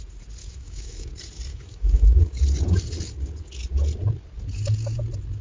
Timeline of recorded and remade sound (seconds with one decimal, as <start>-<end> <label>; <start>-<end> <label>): 0.0-0.4 recorded; 0.4-1.1 remade; 1.1-1.5 recorded; 1.5-2.2 remade; 2.2-5.4 recorded